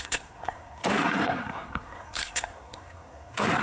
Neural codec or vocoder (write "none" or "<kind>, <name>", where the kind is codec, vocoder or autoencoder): codec, SNAC